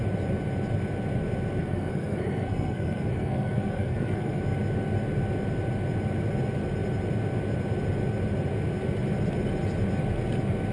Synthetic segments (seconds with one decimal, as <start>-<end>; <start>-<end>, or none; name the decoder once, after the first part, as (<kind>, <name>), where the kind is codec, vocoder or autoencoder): 1.6-4.4 (codec, SNAC)